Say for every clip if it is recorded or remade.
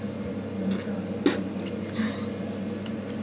recorded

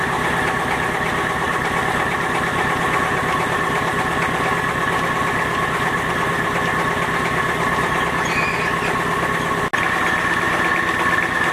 recorded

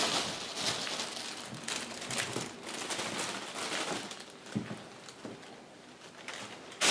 recorded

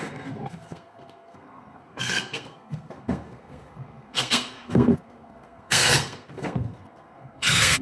remade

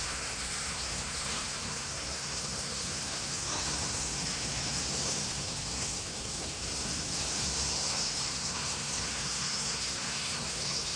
remade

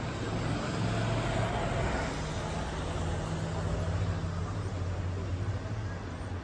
recorded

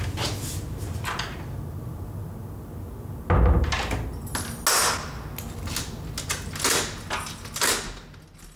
recorded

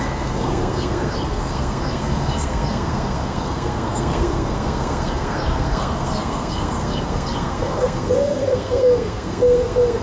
remade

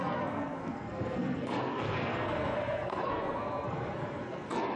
remade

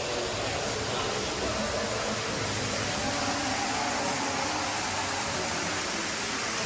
recorded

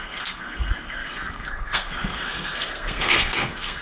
remade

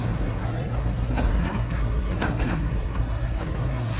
remade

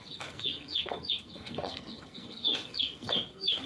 remade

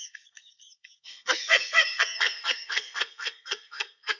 remade